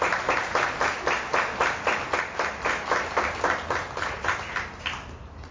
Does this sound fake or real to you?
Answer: real